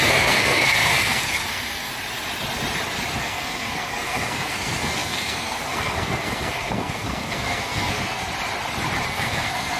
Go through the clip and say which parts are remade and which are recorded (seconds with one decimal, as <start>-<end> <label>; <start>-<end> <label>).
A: 0.0-1.9 remade; 1.9-3.2 recorded; 3.2-8.3 remade; 8.3-9.1 recorded; 9.1-9.8 remade

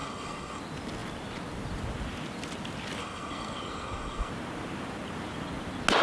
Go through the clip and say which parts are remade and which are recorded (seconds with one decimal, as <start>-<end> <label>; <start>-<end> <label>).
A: 0.0-0.6 remade; 0.6-3.0 recorded; 3.0-4.3 remade; 4.3-6.0 recorded